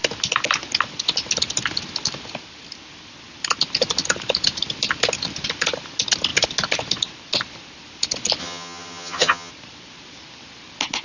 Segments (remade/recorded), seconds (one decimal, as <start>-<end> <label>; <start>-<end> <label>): 0.0-8.4 recorded; 8.4-9.5 remade; 9.5-11.0 recorded